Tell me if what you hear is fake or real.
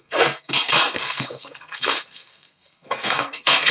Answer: fake